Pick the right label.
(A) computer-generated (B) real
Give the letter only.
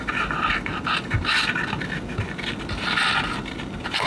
B